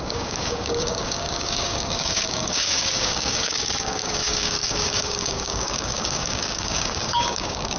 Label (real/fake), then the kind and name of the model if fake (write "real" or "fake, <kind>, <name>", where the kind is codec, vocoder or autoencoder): fake, codec, DAC